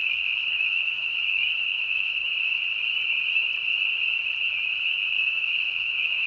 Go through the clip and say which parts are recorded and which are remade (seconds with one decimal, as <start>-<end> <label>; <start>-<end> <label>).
0.0-2.3 remade; 2.3-4.9 recorded; 4.9-6.3 remade